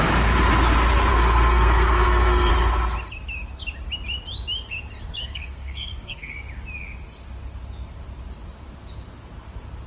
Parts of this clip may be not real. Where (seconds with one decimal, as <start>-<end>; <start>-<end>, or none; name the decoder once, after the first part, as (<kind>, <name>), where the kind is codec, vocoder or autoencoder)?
1.1-2.5 (codec, SNAC); 5.2-6.3